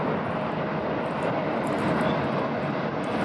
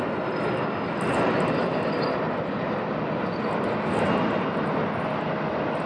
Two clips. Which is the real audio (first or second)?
second